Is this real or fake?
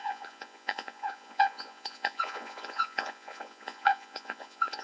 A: fake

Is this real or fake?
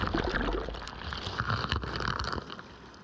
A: real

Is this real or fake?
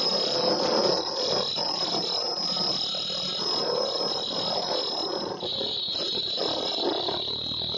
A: real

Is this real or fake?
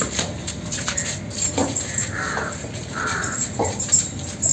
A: real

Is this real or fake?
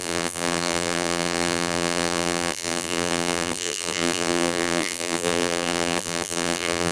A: fake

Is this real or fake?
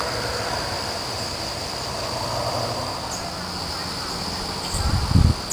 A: real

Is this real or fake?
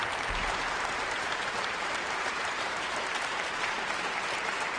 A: fake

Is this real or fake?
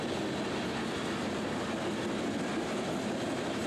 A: real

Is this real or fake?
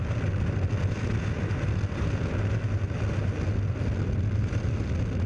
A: real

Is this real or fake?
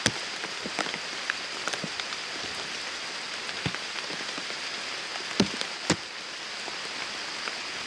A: real